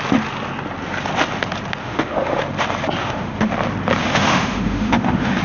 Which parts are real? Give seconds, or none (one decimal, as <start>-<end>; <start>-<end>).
0.0-1.8; 2.4-3.0; 3.5-4.0

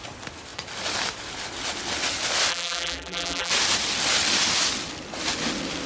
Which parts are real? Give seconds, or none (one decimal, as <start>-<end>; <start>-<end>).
0.0-2.5; 3.5-5.9

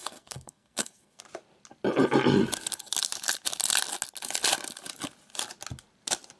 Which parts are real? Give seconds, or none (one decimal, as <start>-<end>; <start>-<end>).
1.2-6.4

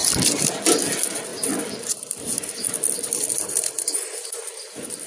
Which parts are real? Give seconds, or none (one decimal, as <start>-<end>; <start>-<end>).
0.6-1.3; 4.4-5.1

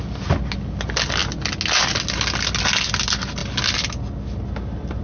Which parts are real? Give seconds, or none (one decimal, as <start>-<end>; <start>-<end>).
0.0-5.0

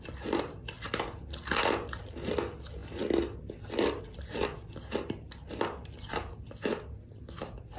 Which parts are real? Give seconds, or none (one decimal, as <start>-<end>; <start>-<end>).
0.0-7.8

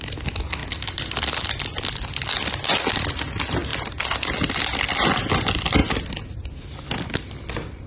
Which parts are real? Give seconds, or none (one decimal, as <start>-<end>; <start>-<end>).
0.0-5.8

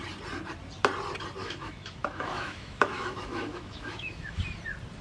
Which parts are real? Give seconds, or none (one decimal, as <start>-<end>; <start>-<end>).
0.0-1.4; 4.4-5.0